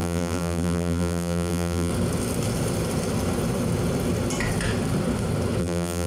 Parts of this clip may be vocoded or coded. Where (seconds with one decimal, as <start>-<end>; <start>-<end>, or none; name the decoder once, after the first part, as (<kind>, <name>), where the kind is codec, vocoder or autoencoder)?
0.0-1.9 (vocoder, BigVGAN v2); 5.6-6.1